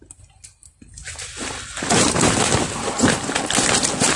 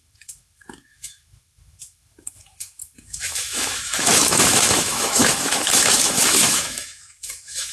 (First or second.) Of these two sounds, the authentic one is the first